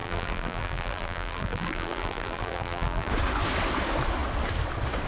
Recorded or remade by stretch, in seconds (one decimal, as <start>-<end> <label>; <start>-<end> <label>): 0.0-3.1 remade; 3.1-5.1 recorded